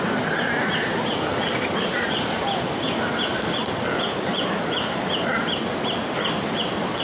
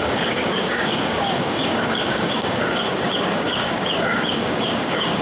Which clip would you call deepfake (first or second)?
second